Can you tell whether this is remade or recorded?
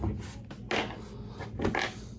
recorded